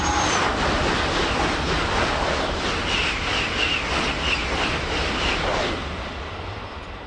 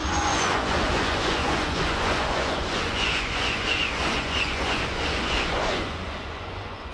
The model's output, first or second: second